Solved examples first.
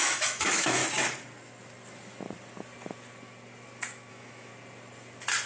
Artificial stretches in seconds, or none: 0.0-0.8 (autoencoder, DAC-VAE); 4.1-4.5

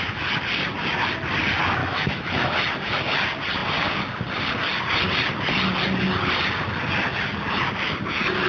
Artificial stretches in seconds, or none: 1.8-2.5 (autoencoder, DAC-VAE)

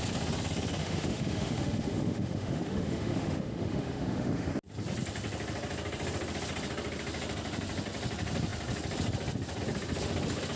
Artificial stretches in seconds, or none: 0.8-4.5 (autoencoder, DAC-VAE)

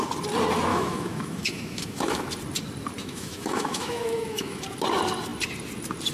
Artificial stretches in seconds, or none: 0.7-2.2 (autoencoder, DAC-VAE); 3.0-4.6